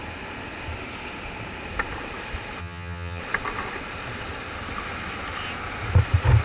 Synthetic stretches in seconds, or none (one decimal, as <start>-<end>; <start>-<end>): 2.6-3.2